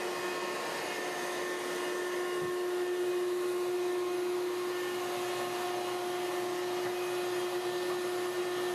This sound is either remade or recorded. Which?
recorded